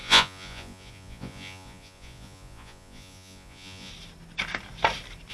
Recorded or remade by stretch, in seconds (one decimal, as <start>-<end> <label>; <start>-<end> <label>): 0.0-3.9 remade; 3.9-5.3 recorded